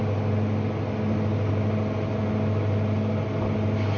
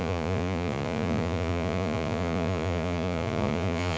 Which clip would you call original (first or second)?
first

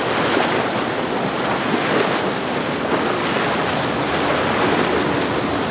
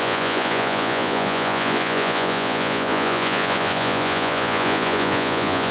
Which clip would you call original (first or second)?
first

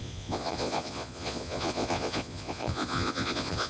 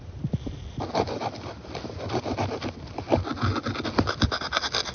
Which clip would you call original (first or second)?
second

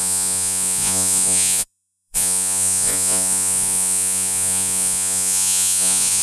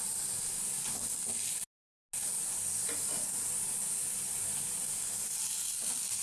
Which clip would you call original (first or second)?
second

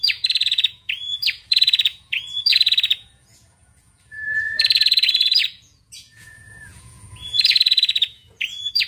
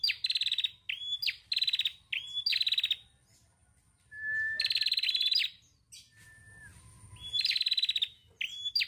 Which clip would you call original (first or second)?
second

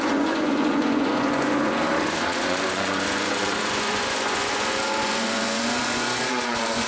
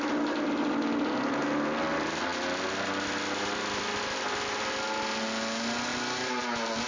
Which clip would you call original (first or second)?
second